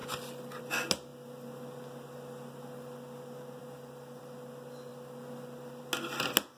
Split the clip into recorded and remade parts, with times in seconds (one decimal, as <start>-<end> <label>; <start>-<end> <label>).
0.0-0.6 remade; 0.6-3.6 recorded; 3.6-4.2 remade; 4.2-4.9 recorded; 4.9-5.8 remade; 5.8-6.6 recorded